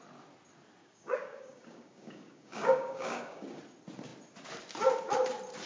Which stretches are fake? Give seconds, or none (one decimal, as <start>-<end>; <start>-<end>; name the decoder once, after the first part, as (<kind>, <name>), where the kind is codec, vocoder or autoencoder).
0.8-3.6 (codec, DAC)